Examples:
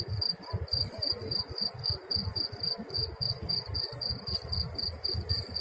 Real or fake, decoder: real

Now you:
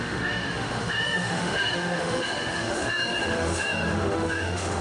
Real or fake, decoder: fake, autoencoder, DAC-VAE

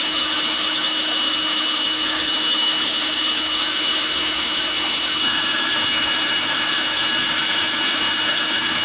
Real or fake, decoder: fake, autoencoder, DAC-VAE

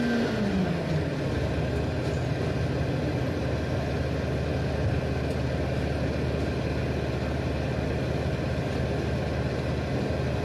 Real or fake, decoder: real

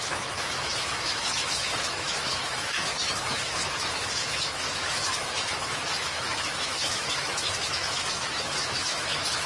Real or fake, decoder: fake, autoencoder, DAC-VAE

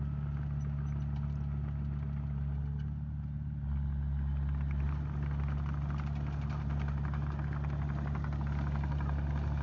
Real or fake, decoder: real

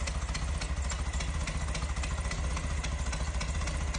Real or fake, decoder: real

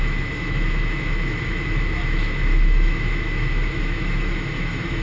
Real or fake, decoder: fake, autoencoder, DAC-VAE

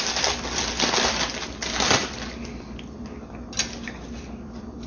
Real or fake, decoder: real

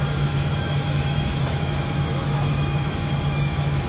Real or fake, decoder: fake, autoencoder, DAC-VAE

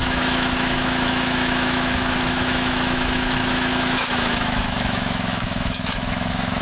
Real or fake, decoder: fake, autoencoder, DAC-VAE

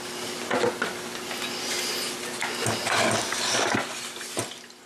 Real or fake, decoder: real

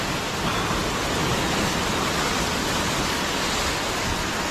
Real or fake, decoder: real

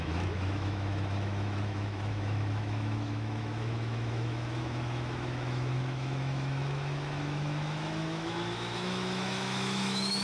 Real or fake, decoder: fake, autoencoder, DAC-VAE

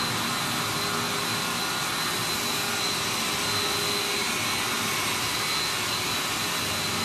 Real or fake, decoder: real